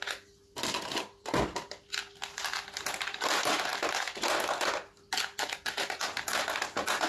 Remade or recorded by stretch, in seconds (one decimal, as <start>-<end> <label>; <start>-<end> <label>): 0.0-7.1 recorded